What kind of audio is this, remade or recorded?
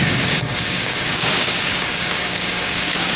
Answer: remade